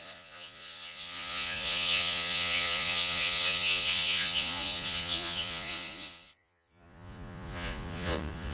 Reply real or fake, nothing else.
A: fake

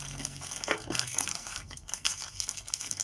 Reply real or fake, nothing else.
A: fake